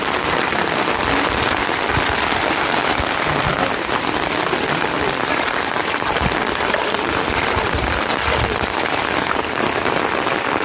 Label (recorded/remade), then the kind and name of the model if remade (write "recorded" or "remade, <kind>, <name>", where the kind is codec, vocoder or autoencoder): remade, vocoder, BigVGAN v2